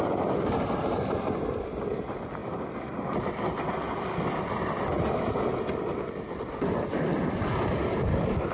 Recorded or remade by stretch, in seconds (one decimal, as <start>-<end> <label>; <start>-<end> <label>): 0.0-8.5 recorded